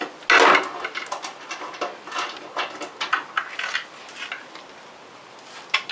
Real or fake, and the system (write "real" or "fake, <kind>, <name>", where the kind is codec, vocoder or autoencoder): real